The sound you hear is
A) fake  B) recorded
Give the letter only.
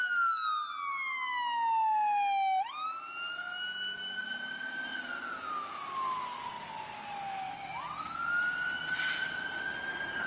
B